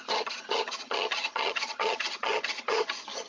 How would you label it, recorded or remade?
remade